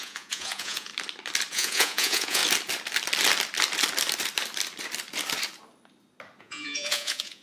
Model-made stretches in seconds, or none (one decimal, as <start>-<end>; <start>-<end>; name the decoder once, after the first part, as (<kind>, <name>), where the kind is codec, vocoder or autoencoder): 0.0-0.9 (vocoder, Vocos); 1.5-2.4; 6.4-7.4